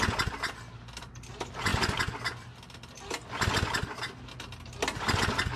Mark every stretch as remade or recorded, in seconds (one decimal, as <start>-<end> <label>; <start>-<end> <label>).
0.0-5.6 recorded